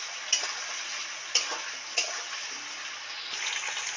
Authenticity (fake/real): real